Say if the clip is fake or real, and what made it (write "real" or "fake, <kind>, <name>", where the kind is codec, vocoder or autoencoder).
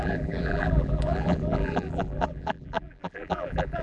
fake, vocoder, BigVGAN v2